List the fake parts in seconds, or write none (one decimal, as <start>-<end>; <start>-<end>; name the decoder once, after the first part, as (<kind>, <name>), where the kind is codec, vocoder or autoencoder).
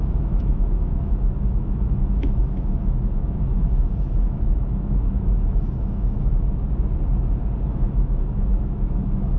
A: 0.0-6.3 (autoencoder, DAC-VAE); 7.6-9.4